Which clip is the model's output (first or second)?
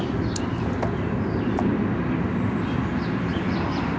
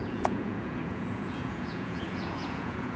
second